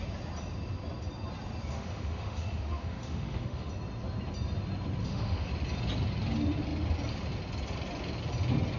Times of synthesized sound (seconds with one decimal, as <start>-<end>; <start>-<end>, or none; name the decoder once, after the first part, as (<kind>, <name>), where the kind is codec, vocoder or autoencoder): 1.7-3.7 (autoencoder, DAC-VAE); 5.0-5.5